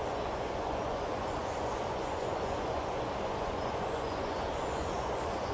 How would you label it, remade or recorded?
remade